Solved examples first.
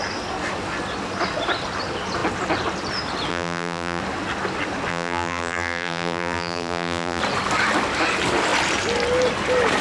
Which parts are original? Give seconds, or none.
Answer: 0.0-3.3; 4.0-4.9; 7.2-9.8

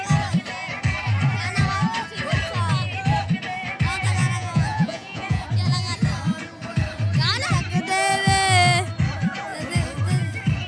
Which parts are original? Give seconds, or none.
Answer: 0.0-4.2; 5.4-10.7